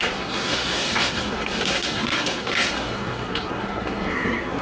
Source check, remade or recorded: remade